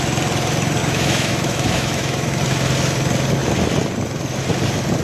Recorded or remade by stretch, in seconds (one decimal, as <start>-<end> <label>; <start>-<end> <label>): 0.0-0.8 recorded; 0.8-2.4 remade; 2.4-5.0 recorded